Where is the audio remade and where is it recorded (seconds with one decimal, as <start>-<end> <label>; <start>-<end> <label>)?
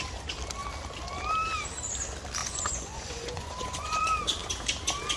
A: 0.0-2.4 recorded; 2.4-4.0 remade; 4.0-5.2 recorded